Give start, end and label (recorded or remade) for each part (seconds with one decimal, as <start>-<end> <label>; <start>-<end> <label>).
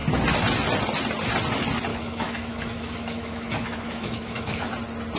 0.0-1.9 recorded; 1.9-4.7 remade; 4.7-5.2 recorded